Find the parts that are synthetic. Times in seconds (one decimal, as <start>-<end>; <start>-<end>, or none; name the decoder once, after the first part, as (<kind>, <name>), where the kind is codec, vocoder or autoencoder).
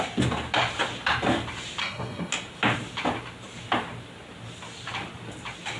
1.8-2.3 (codec, SNAC)